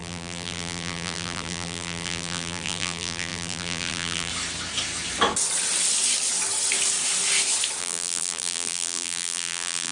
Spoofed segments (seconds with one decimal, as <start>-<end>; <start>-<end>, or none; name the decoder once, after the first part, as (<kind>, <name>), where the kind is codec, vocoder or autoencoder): 0.0-4.3 (vocoder, BigVGAN v2); 7.8-9.9

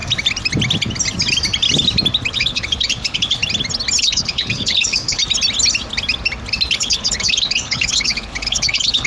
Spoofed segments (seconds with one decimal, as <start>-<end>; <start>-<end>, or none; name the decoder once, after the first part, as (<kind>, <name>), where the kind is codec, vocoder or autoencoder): 2.3-3.4 (codec, HILCodec); 4.0-5.2; 6.7-9.1